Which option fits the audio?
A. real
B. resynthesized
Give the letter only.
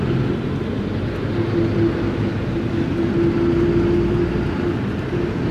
A